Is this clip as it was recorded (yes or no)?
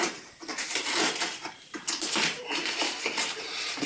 no